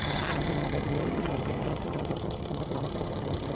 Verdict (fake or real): fake